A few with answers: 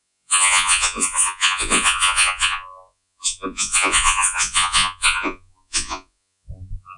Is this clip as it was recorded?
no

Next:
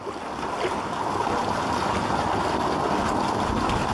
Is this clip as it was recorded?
yes